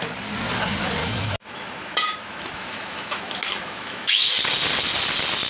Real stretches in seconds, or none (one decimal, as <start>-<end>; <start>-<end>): 0.0-1.0; 4.3-5.5